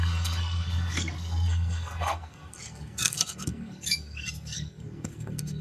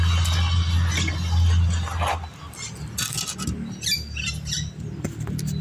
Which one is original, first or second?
second